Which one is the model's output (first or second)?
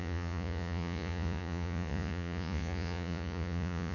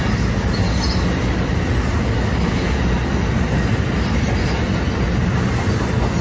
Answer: first